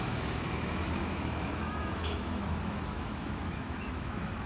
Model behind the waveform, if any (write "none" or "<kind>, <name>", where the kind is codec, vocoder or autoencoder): autoencoder, DAC-VAE